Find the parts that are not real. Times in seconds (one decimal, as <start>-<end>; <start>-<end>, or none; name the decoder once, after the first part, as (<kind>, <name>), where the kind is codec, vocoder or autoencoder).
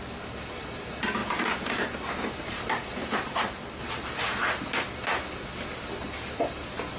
3.0-3.7 (vocoder, BigVGAN v2)